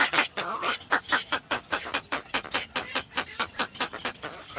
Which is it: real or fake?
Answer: fake